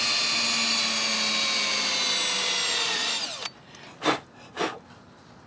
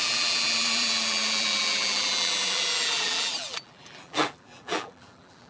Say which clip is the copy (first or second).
second